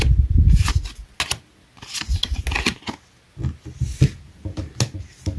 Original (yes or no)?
yes